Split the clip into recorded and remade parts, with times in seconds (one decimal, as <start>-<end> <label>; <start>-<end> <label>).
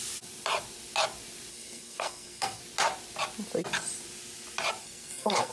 0.0-1.5 recorded; 1.5-2.6 remade; 2.6-4.8 recorded; 4.8-5.5 remade